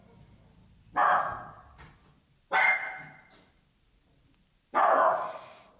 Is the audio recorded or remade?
recorded